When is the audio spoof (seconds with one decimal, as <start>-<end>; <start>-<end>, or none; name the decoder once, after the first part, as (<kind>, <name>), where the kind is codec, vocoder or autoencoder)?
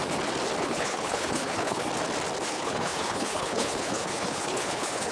0.6-1.8 (codec, HILCodec); 2.5-5.1